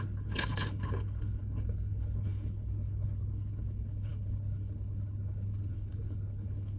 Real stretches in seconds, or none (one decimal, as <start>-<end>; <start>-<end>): none